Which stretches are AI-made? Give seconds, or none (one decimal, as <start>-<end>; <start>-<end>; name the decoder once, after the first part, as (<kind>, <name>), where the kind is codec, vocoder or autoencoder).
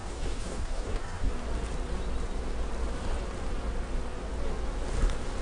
0.0-1.3 (codec, DAC)